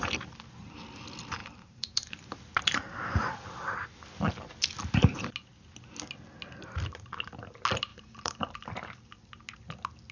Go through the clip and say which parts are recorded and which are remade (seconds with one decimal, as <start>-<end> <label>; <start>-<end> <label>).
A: 0.0-1.4 recorded; 1.4-2.3 remade; 2.3-7.9 recorded; 7.9-8.4 remade; 8.4-10.1 recorded